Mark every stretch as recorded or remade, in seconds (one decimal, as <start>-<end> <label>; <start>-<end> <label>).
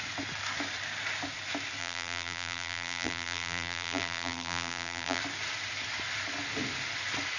0.0-1.8 recorded; 1.8-5.2 remade; 5.2-7.4 recorded